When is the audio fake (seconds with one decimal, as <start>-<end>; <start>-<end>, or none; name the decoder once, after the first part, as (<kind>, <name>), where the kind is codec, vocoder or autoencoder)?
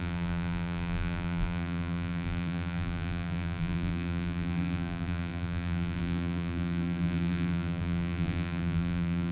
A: 0.0-9.3 (vocoder, BigVGAN v2)